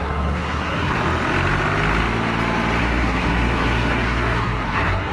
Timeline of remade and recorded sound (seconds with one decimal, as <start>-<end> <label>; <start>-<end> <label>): 0.0-1.0 remade; 1.0-2.8 recorded; 2.8-5.1 remade